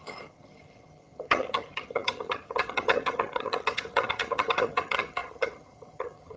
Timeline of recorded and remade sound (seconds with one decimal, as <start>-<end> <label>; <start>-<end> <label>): 0.0-6.4 remade